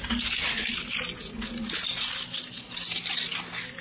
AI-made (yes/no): no